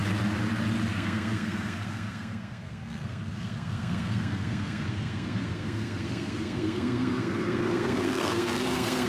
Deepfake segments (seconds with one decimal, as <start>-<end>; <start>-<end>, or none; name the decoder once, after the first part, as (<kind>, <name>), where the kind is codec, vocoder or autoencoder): 0.9-9.1 (codec, SNAC)